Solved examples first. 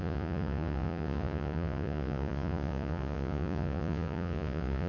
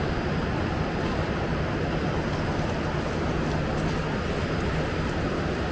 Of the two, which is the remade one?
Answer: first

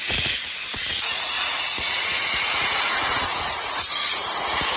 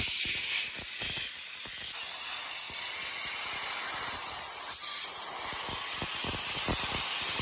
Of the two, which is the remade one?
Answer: first